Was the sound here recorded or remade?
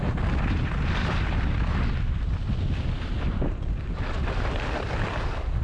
recorded